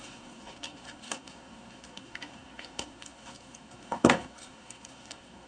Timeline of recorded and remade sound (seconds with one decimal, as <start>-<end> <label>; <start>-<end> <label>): 0.0-5.5 remade